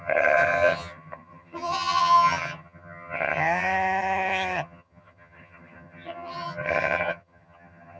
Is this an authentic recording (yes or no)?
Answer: no